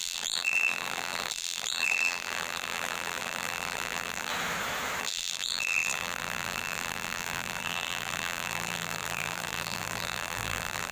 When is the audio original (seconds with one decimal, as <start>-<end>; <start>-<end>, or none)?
4.3-5.0